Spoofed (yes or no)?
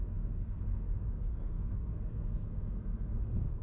yes